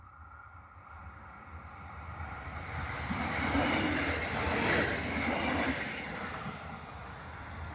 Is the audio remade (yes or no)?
no